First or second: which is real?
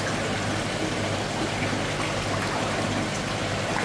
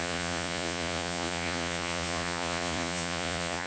first